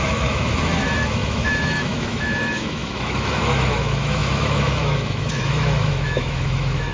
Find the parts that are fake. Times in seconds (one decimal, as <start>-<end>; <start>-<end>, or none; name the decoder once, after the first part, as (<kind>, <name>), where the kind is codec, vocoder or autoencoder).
0.0-6.9 (autoencoder, DAC-VAE)